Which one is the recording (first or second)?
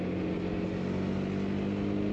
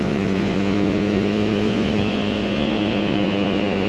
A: first